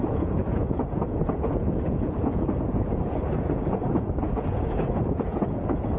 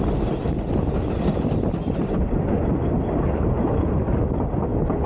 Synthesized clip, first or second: first